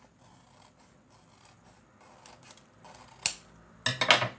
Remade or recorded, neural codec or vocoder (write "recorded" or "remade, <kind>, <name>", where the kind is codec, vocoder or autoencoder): recorded